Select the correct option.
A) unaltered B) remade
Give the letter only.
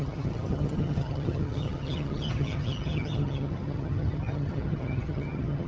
B